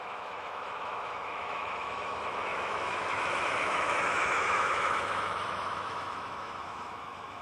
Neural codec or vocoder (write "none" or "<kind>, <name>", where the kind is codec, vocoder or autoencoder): autoencoder, DAC-VAE